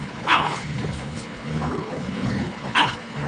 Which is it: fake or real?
fake